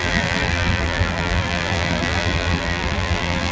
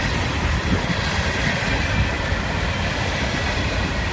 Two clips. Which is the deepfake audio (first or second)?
first